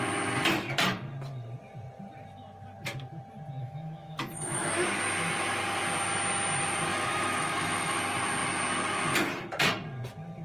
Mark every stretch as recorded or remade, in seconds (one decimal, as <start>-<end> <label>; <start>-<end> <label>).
0.0-3.6 recorded; 3.6-4.7 remade; 4.7-6.9 recorded; 6.9-8.0 remade; 8.0-10.4 recorded